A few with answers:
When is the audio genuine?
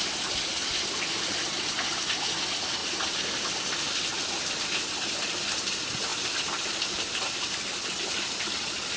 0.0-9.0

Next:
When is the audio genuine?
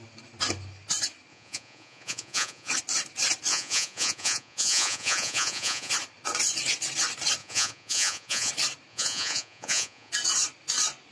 0.0-1.3; 2.7-3.5; 5.9-7.4; 8.5-8.9; 10.1-11.1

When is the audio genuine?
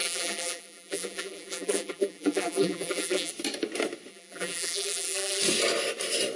3.3-4.1; 5.4-6.4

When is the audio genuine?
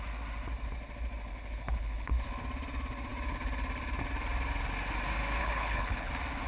0.0-1.3; 2.1-5.4; 6.1-6.5